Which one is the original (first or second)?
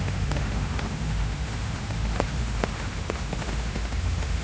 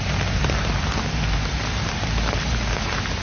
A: second